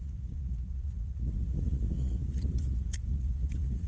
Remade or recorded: remade